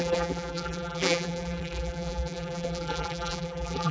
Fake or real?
fake